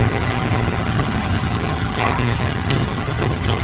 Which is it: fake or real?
fake